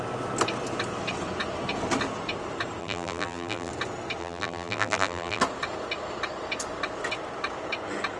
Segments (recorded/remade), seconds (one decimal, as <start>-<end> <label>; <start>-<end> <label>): 0.0-2.8 recorded; 2.8-3.7 remade; 3.7-4.2 recorded; 4.2-5.4 remade; 5.4-8.2 recorded